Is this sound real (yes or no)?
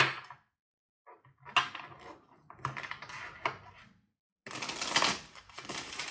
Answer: yes